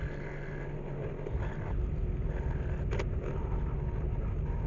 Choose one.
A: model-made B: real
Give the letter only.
B